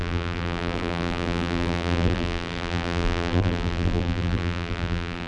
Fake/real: fake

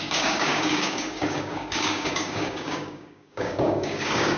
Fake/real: fake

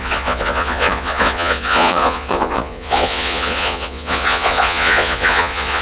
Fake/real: fake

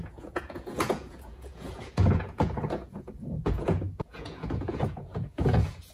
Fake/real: fake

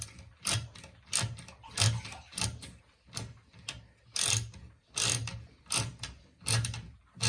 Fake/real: real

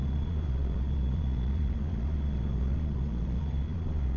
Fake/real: fake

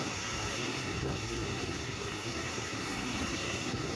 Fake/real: fake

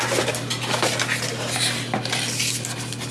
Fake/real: real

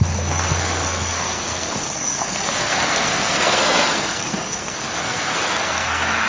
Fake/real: fake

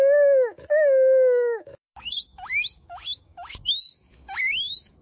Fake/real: fake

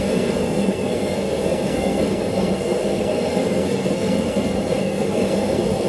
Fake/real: fake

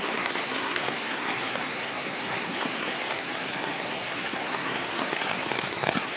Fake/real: fake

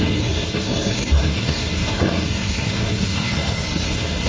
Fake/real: fake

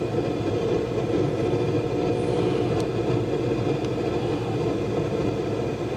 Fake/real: real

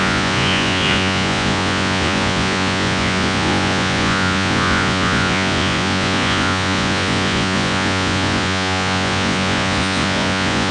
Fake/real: fake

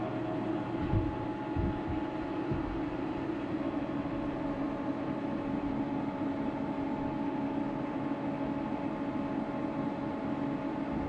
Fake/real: real